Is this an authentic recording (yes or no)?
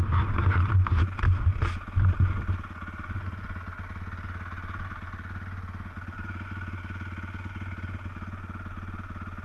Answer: yes